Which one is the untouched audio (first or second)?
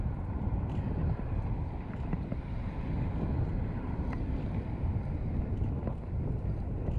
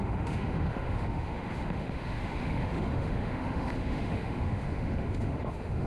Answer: first